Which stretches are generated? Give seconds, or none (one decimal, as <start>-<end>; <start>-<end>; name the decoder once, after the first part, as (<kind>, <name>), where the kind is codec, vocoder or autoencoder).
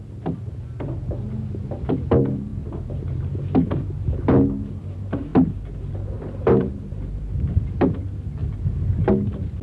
2.5-3.2 (vocoder, BigVGAN v2); 5.3-7.2